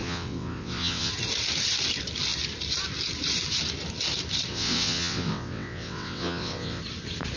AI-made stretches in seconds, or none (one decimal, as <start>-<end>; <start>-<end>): 0.0-1.1; 4.5-6.8